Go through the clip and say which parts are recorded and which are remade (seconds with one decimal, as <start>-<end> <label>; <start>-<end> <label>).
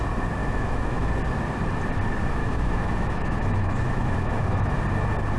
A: 0.0-0.4 recorded; 0.4-1.1 remade; 1.1-2.4 recorded; 2.4-4.7 remade; 4.7-5.4 recorded